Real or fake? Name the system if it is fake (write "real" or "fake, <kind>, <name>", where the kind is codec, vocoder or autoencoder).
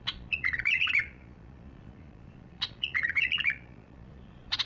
fake, vocoder, Vocos